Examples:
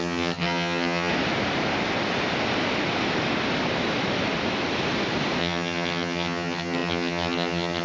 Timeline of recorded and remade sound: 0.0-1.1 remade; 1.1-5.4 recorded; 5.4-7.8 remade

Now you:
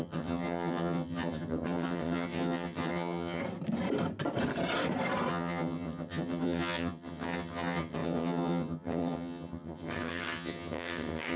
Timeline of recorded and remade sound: 0.0-3.4 remade; 3.4-5.3 recorded; 5.3-11.4 remade

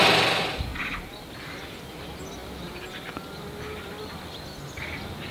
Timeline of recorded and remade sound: 0.0-5.3 recorded

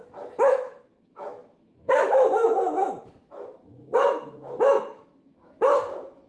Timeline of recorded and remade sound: 0.0-6.3 remade

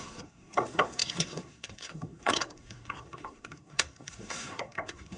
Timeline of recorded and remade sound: 0.0-5.2 remade

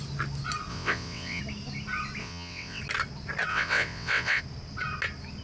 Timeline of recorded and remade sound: 0.0-0.7 recorded; 0.7-1.4 remade; 1.4-2.2 recorded; 2.2-2.8 remade; 2.8-3.5 recorded; 3.5-4.4 remade; 4.4-5.4 recorded

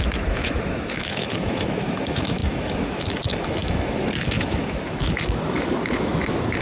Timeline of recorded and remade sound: 0.0-6.6 remade

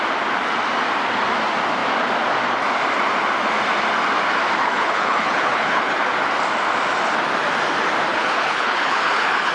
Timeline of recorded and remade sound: 0.0-4.6 recorded; 4.6-6.0 remade; 6.0-8.1 recorded; 8.1-9.5 remade